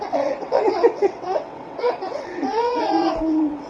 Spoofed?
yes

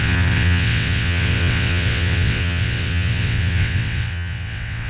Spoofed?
yes